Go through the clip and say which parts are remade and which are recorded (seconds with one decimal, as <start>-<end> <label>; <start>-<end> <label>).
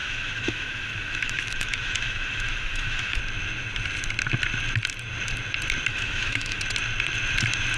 0.0-3.2 remade; 3.2-5.9 recorded; 5.9-6.6 remade; 6.6-7.8 recorded